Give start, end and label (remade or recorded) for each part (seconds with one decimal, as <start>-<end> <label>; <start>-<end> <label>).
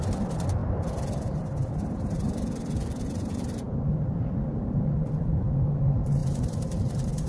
0.0-0.6 recorded; 0.6-4.1 remade; 4.1-6.2 recorded; 6.2-7.3 remade